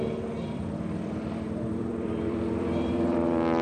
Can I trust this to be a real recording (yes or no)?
no